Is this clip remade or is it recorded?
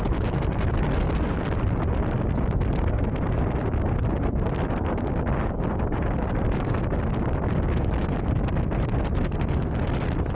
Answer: recorded